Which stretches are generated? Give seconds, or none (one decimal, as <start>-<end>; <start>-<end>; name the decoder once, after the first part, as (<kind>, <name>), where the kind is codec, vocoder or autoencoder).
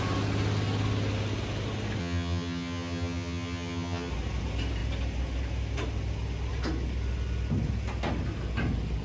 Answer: 2.0-4.1 (vocoder, HiFi-GAN)